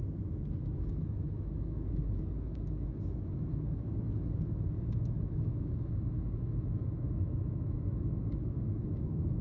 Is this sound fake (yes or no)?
yes